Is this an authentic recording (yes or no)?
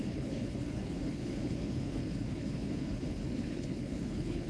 no